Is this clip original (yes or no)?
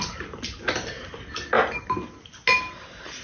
yes